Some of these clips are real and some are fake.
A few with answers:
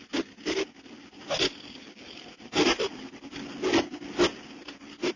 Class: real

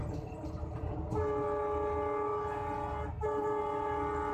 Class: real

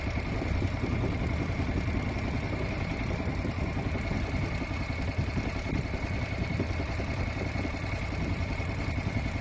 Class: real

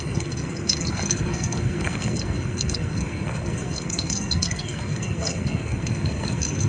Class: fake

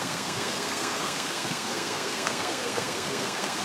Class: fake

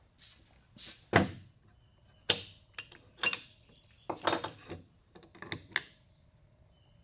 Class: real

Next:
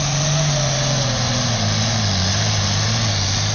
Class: real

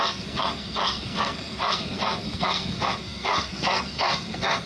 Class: fake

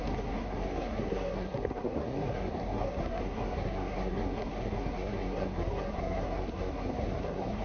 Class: fake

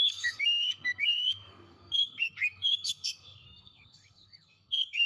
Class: fake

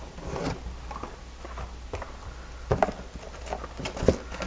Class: real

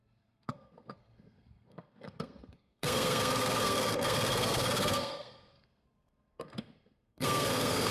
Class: fake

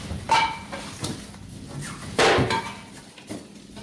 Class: real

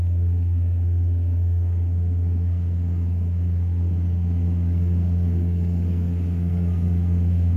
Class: fake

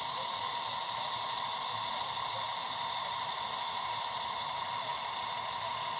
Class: real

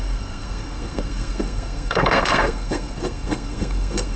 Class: fake